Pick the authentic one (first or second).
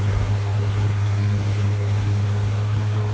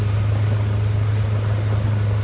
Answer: second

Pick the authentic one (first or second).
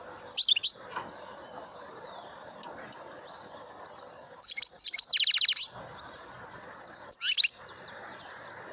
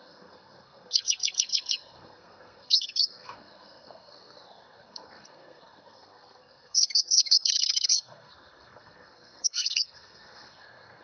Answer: first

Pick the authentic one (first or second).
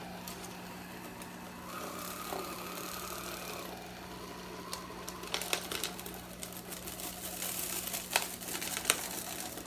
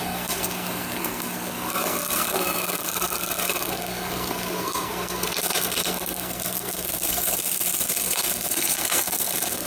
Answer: first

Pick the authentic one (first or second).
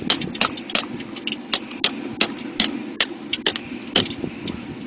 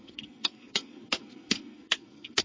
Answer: first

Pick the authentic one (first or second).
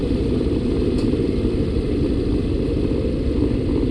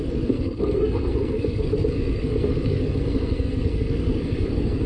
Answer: first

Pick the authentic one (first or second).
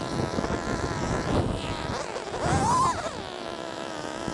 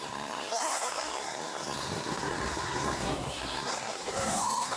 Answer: first